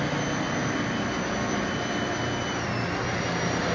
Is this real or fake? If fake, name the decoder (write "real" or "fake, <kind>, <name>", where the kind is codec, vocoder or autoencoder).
real